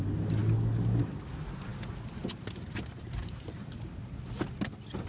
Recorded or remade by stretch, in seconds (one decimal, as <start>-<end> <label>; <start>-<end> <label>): 0.0-5.1 recorded